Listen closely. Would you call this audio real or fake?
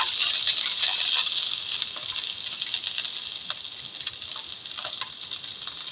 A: real